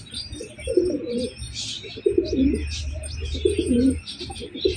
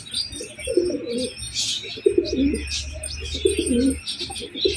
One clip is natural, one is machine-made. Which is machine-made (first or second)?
first